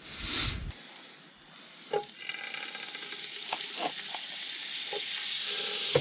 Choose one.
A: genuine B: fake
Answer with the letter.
A